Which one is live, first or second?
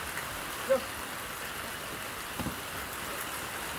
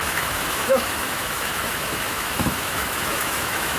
first